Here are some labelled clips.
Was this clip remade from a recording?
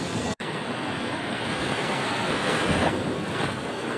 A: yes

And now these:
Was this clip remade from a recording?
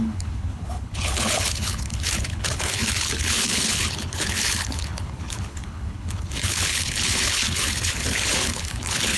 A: yes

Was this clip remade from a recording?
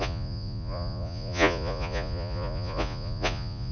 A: yes